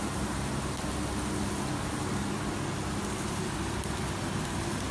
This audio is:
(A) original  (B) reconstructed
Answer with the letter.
A